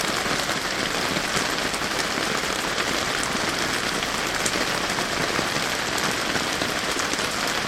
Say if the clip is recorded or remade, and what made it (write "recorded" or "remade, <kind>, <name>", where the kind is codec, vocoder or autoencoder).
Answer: recorded